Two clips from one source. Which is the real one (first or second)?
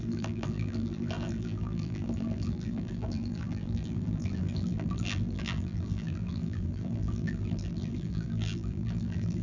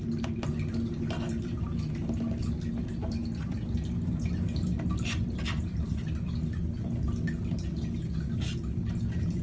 second